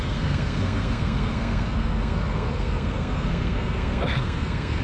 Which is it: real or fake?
fake